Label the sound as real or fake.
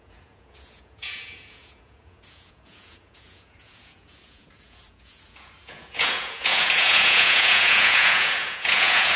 fake